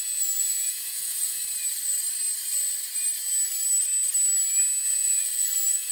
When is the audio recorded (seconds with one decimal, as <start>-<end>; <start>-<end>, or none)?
1.4-4.9